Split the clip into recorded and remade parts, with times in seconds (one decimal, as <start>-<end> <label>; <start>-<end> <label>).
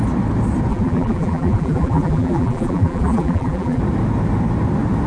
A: 0.0-0.7 recorded; 0.7-3.8 remade; 3.8-5.1 recorded